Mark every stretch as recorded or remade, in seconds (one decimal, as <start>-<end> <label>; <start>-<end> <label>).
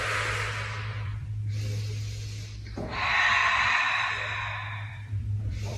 0.0-0.9 recorded; 0.9-1.5 remade; 1.5-3.4 recorded; 3.4-4.1 remade; 4.1-4.9 recorded; 4.9-5.8 remade